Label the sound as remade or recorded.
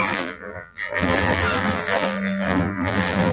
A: remade